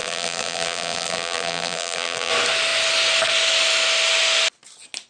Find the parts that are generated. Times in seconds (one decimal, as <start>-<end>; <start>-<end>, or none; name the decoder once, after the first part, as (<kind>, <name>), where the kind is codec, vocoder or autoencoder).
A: 0.0-2.3 (vocoder, BigVGAN v2)